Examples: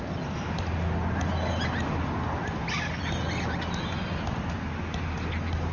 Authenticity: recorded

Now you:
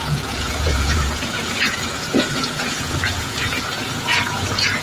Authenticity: remade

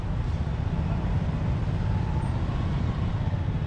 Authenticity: recorded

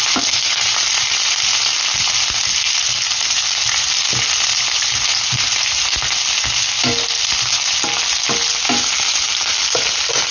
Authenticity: recorded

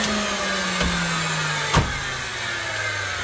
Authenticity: recorded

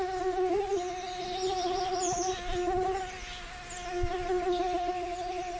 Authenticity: recorded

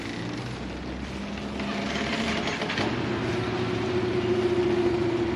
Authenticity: recorded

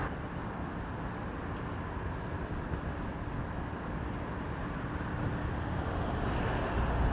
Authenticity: recorded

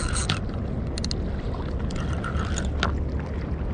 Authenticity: recorded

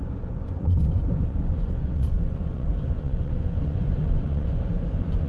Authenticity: remade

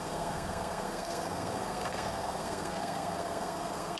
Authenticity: remade